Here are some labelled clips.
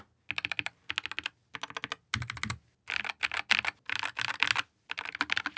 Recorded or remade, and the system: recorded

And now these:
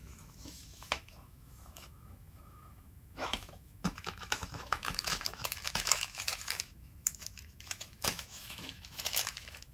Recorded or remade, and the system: remade, autoencoder, DAC-VAE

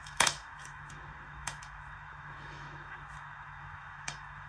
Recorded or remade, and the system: remade, autoencoder, DAC-VAE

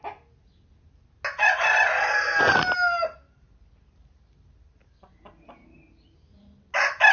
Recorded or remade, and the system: recorded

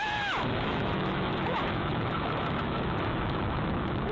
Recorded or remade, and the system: remade, autoencoder, DAC-VAE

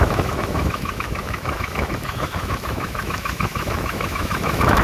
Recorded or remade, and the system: remade, autoencoder, DAC-VAE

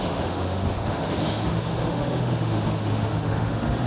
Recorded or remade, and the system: remade, autoencoder, DAC-VAE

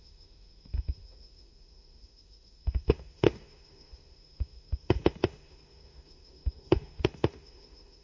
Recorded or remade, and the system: remade, autoencoder, DAC-VAE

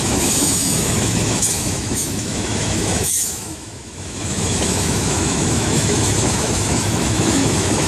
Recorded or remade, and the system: remade, autoencoder, DAC-VAE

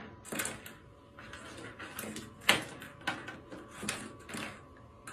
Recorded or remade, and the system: recorded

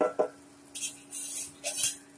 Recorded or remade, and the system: recorded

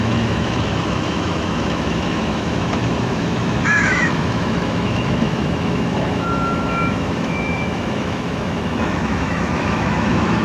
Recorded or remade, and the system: remade, autoencoder, DAC-VAE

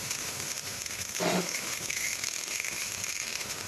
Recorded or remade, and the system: remade, autoencoder, DAC-VAE